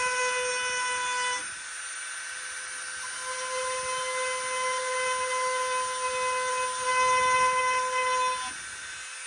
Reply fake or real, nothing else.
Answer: real